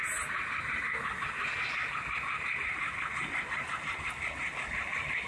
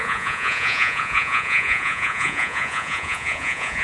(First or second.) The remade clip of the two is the second